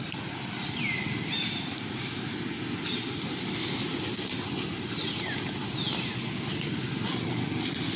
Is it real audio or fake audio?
real